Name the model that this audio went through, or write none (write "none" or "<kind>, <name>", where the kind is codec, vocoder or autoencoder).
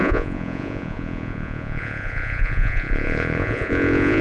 vocoder, Vocos